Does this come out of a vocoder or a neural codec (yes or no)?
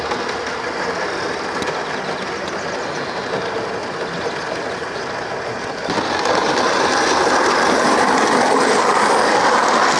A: no